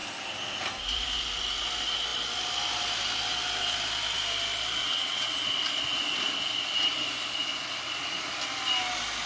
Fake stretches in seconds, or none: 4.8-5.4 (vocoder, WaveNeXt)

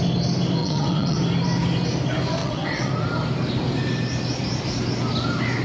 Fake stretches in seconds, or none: 0.6-1.2 (vocoder, WaveNeXt); 2.4-2.9

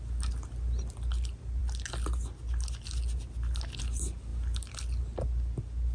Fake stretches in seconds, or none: none

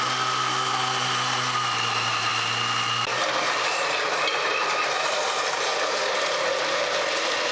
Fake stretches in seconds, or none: none

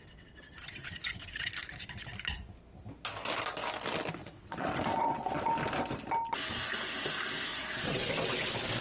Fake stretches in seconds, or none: 0.0-1.5 (vocoder, WaveNeXt); 4.2-5.5; 7.5-8.1

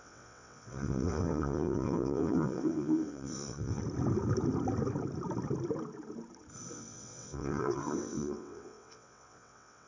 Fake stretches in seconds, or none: 0.0-3.8 (vocoder, WaveNeXt); 6.7-9.9

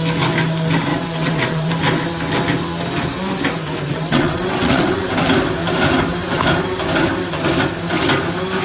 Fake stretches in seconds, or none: 0.9-1.7 (vocoder, WaveNeXt); 3.9-5.1

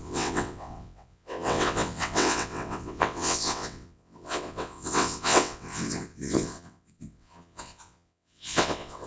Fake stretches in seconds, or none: 0.0-9.1 (vocoder, WaveNeXt)